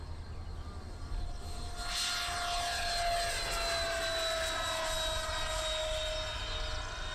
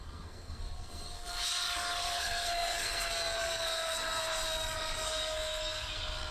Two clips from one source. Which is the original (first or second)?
first